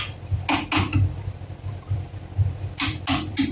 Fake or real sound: real